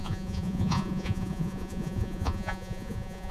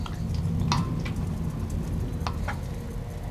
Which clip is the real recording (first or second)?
second